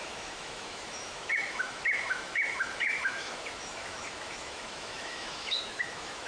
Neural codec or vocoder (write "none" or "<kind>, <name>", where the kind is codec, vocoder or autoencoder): autoencoder, DAC-VAE